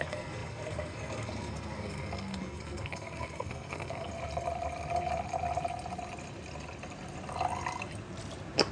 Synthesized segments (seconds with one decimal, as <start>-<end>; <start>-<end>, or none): 0.0-4.1